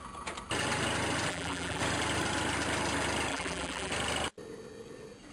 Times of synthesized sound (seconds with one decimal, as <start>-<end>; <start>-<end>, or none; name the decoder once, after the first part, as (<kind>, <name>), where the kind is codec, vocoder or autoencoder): 1.3-1.8 (vocoder, BigVGAN v2); 3.3-3.9